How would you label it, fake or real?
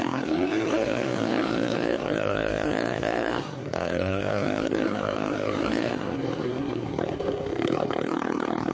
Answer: fake